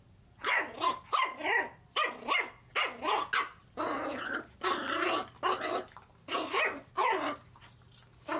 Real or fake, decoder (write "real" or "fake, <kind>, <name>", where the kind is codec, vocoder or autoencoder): real